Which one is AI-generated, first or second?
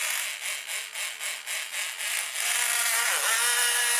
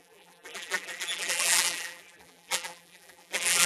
second